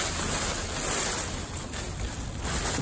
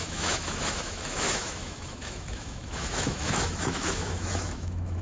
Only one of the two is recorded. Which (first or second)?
first